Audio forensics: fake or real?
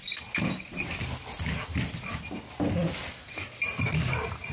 real